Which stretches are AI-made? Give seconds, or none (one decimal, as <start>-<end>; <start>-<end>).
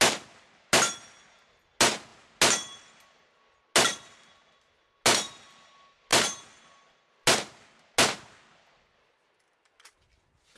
none